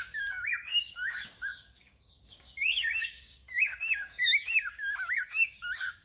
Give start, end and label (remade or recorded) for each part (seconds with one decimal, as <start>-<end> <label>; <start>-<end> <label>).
0.0-6.0 remade